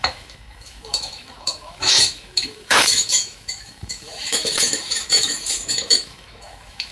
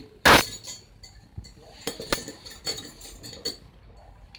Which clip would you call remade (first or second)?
first